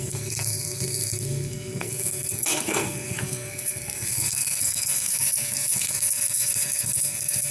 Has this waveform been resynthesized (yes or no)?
yes